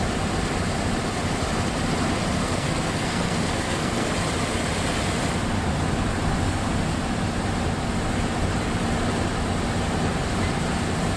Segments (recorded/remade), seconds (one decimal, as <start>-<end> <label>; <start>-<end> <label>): 0.0-2.4 recorded; 2.4-4.1 remade; 4.1-11.2 recorded